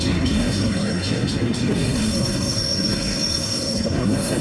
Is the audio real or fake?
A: fake